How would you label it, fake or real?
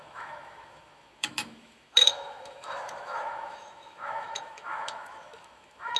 fake